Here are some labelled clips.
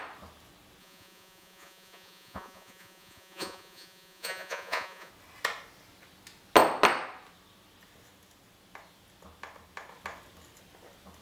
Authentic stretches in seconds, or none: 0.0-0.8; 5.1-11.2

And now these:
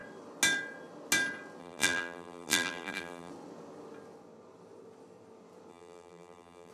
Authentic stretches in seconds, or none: 0.0-1.6; 3.3-5.7

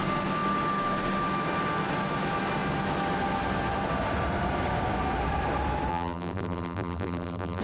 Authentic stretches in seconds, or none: 0.0-5.9

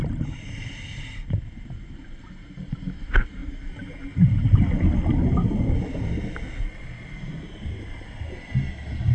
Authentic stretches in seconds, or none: 0.0-9.1

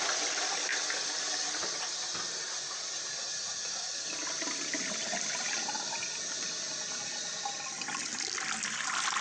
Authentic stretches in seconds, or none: 0.0-9.2

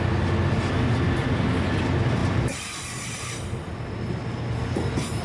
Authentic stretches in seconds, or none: 0.0-5.2

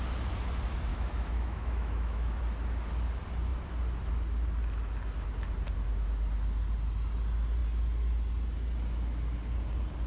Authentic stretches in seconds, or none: 0.0-0.9; 2.4-10.1

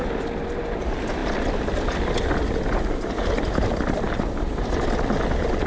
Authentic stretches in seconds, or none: 0.0-5.7